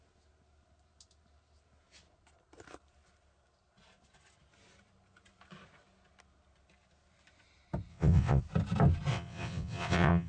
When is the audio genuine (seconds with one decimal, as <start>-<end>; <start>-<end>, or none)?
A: 0.0-7.9; 8.4-9.1